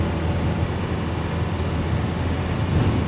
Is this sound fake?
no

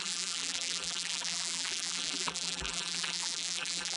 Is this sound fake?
yes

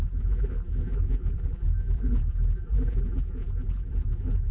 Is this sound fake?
yes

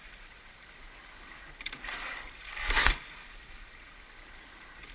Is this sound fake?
no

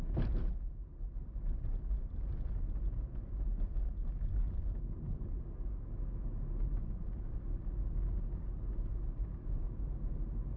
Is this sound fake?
no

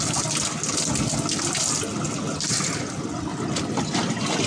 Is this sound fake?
no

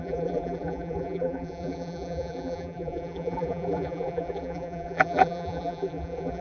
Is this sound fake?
yes